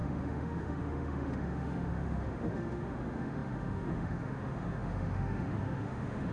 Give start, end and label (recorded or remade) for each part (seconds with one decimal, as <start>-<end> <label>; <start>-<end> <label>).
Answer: 0.0-6.3 remade